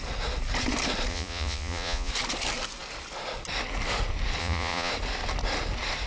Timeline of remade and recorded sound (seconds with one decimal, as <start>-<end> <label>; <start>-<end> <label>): 0.0-1.1 recorded; 1.1-2.1 remade; 2.1-4.4 recorded; 4.4-4.9 remade; 4.9-6.1 recorded

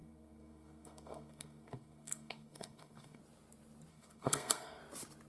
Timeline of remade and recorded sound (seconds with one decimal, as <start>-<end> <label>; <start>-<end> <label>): 0.0-3.2 remade; 3.2-3.9 recorded; 3.9-4.8 remade; 4.8-5.3 recorded